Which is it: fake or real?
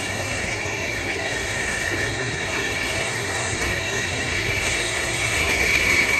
fake